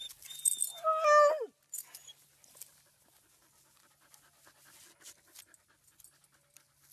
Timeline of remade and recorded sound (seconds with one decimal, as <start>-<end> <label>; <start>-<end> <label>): 0.0-6.9 recorded